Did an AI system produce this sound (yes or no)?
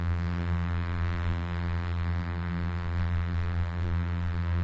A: yes